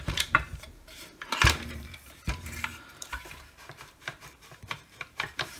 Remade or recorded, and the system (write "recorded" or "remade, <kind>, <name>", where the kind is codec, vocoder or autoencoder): remade, vocoder, BigVGAN v2